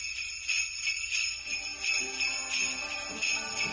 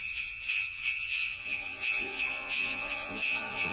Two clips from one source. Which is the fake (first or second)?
second